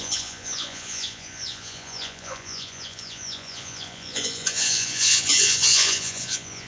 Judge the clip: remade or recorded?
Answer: remade